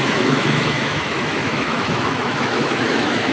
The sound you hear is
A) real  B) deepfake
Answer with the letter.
B